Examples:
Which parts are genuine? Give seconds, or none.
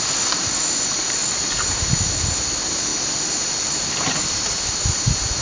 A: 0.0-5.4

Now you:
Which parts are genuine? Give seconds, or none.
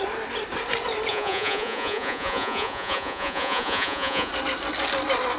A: 0.0-1.1; 4.3-5.4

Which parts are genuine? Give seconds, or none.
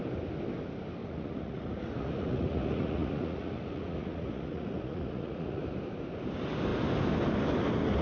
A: 0.0-1.0; 5.6-8.0